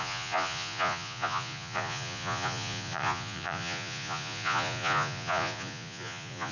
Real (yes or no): no